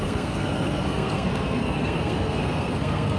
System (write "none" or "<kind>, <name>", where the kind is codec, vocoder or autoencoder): codec, SNAC